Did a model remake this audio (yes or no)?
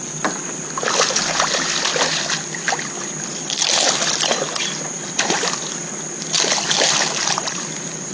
no